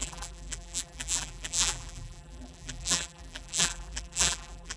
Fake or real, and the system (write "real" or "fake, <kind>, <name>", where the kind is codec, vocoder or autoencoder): fake, vocoder, BigVGAN v2